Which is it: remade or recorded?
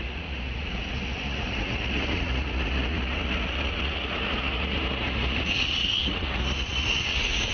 remade